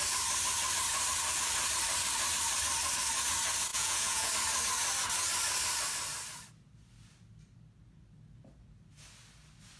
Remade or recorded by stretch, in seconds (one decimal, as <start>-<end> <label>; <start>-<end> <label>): 0.0-3.7 recorded; 3.7-4.3 remade; 4.3-9.8 recorded